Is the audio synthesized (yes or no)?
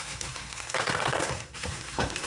yes